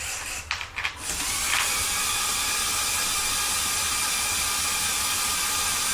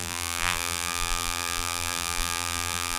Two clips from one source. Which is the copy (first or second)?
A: second